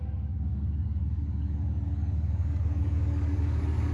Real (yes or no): no